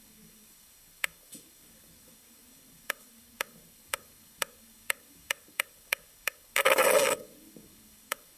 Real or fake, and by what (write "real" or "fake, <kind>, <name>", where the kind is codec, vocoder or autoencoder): fake, codec, DAC